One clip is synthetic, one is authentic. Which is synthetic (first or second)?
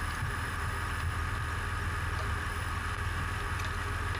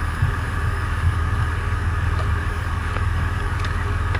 second